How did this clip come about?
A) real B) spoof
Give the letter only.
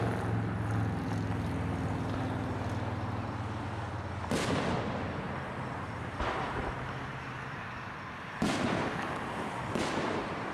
A